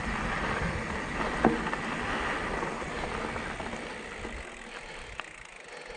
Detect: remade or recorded recorded